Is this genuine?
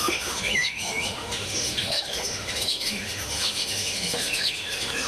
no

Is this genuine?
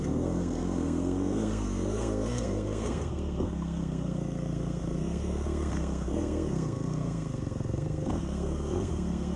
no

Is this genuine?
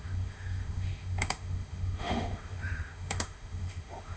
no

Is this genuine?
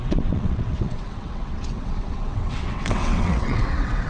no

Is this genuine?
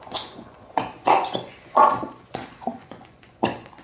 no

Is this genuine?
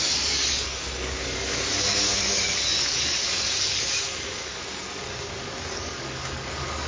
no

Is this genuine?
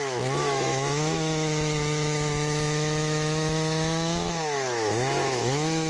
no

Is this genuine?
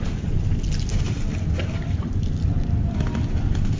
yes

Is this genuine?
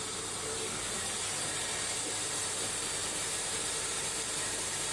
no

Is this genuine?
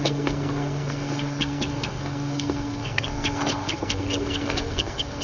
no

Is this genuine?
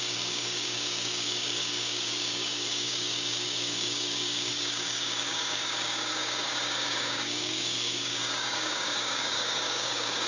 no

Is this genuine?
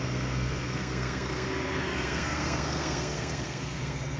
no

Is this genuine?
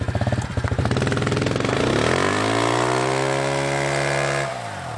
yes